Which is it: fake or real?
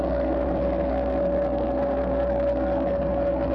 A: fake